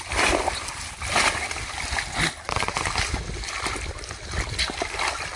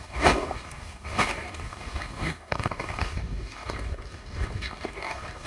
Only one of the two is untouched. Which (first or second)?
first